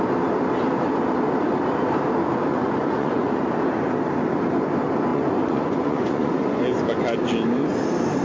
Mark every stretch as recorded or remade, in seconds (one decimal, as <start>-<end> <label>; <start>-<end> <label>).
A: 0.0-2.5 recorded; 2.5-3.4 remade; 3.4-5.1 recorded; 5.1-6.6 remade; 6.6-8.2 recorded